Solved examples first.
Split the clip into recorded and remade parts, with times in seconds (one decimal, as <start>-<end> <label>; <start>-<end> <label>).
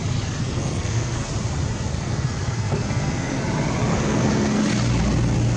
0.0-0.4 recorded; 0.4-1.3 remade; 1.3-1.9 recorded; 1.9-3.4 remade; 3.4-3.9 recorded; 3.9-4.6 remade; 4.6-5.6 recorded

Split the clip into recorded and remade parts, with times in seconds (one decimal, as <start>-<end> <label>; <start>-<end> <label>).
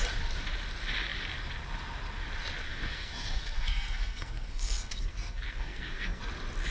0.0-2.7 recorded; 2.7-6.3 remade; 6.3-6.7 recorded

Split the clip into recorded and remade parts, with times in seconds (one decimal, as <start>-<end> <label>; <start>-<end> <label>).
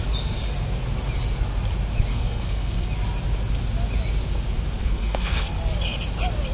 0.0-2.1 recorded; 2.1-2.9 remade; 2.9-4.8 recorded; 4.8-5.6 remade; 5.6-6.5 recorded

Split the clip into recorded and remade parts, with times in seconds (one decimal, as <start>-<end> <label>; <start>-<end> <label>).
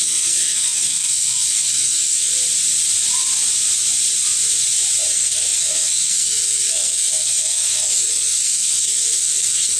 0.0-2.3 remade; 2.3-5.1 recorded; 5.1-9.8 remade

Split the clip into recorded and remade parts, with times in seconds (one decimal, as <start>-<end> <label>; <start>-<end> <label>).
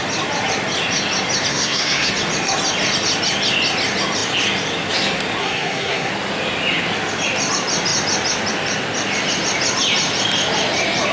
0.0-1.5 recorded; 1.5-2.1 remade; 2.1-5.4 recorded; 5.4-6.1 remade; 6.1-11.1 recorded